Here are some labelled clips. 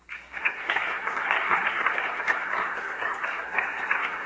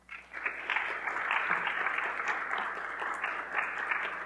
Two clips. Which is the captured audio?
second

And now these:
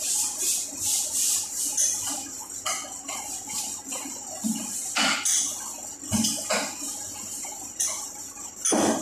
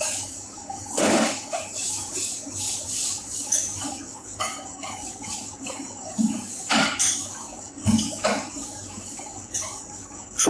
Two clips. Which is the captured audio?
first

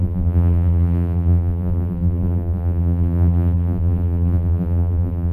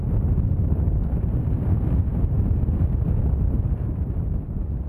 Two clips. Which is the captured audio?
second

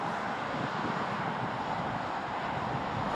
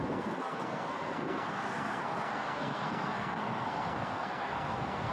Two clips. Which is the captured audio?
first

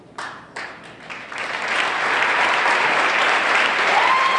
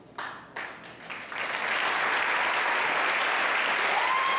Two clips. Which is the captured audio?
second